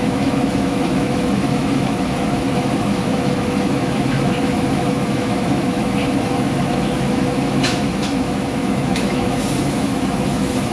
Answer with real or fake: fake